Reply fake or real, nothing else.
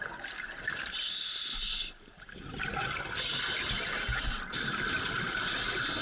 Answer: real